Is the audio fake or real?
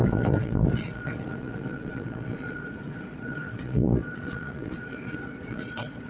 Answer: fake